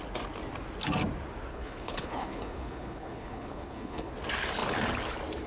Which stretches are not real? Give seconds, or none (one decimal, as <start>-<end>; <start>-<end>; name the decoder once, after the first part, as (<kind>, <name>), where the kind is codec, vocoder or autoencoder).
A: 1.5-4.1 (codec, HILCodec)